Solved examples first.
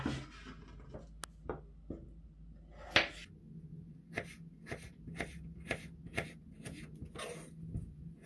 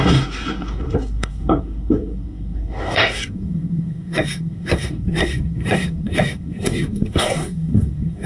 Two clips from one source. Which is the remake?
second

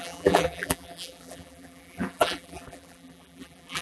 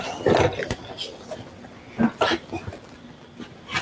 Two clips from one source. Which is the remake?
first